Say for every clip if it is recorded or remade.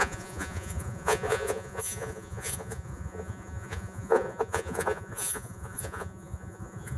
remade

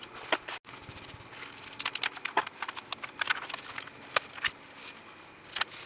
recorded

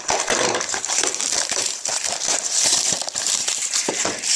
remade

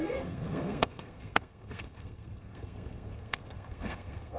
remade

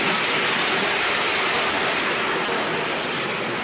recorded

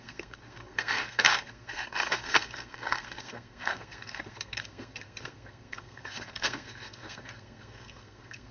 remade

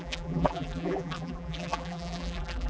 remade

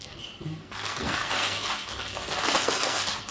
remade